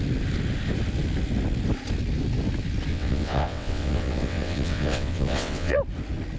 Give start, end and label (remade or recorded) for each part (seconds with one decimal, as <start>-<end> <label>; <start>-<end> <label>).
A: 0.0-2.9 recorded; 2.9-5.8 remade; 5.8-6.4 recorded